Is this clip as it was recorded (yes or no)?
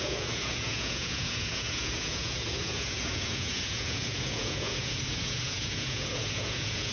no